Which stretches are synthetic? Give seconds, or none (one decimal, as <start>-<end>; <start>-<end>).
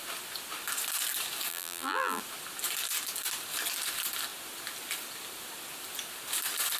1.5-2.2